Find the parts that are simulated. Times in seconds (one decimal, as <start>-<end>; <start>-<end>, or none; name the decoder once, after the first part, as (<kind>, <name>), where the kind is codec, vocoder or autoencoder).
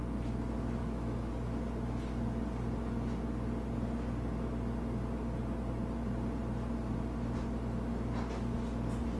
0.8-1.3 (autoencoder, DAC-VAE)